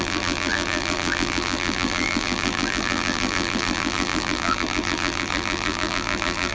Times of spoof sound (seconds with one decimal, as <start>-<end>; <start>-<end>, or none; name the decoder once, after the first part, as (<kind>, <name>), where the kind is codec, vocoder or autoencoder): 0.0-6.5 (vocoder, BigVGAN v2)